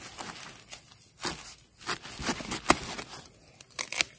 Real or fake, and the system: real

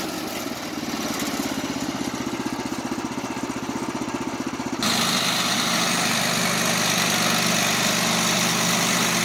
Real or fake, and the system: real